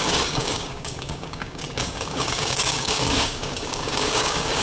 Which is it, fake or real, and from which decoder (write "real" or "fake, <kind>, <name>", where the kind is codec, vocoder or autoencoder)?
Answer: fake, codec, DAC